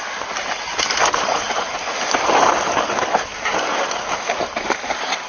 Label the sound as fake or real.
real